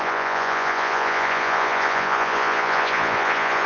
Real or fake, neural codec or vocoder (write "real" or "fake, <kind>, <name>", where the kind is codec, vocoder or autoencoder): fake, vocoder, Vocos